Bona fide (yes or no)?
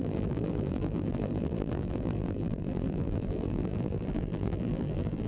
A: no